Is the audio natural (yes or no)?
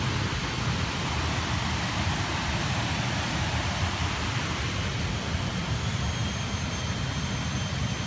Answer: yes